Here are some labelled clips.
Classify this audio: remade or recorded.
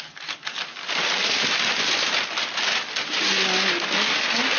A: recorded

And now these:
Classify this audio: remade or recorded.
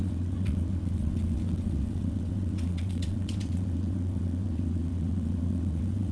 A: remade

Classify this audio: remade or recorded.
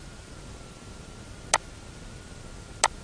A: recorded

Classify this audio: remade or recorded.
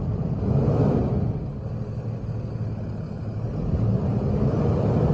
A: recorded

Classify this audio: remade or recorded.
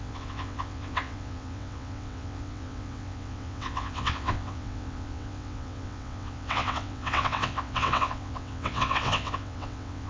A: remade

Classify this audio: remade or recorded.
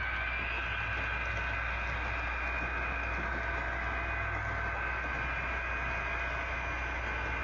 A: recorded